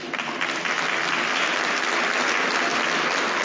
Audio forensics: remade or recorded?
recorded